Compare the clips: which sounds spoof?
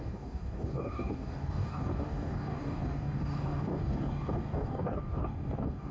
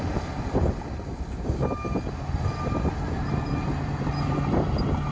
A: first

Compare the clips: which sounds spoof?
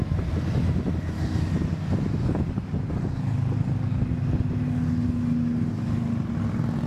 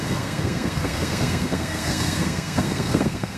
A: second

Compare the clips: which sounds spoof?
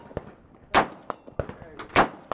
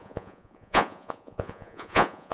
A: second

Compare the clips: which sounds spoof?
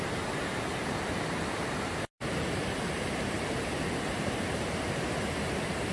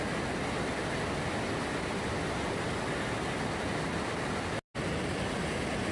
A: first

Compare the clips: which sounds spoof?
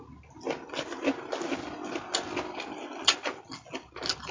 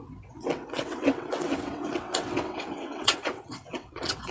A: second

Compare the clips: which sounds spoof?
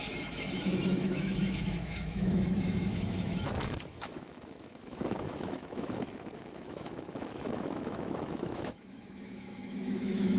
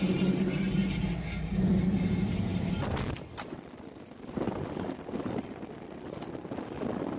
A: first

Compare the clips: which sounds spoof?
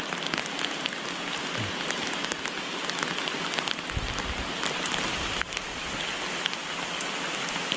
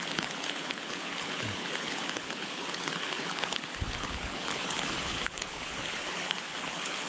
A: second